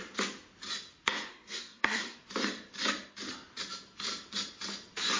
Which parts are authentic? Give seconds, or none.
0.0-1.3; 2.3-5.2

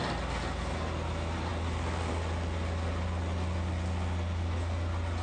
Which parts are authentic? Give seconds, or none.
0.0-5.2

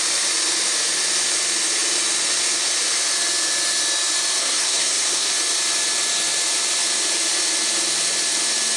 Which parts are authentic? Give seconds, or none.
0.0-4.4; 5.3-8.8

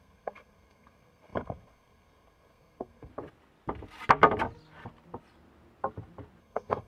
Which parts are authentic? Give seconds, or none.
3.1-6.4

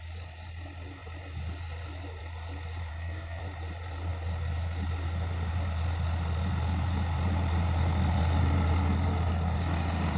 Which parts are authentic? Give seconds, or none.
0.0-2.9; 3.4-10.2